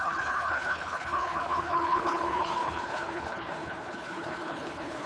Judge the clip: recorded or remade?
remade